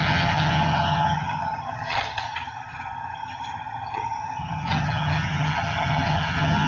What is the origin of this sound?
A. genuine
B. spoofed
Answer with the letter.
B